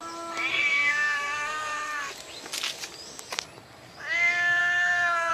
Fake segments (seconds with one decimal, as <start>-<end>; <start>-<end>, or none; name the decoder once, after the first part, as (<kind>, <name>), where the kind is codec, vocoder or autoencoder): 0.5-2.1 (codec, SNAC); 4.6-5.3